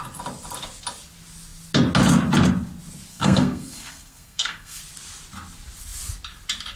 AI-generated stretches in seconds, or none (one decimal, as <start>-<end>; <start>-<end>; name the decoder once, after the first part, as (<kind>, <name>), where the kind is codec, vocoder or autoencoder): 3.1-4.8 (codec, SNAC)